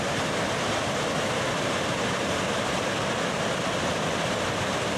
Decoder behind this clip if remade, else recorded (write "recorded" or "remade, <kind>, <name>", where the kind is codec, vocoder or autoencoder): remade, vocoder, BigVGAN v2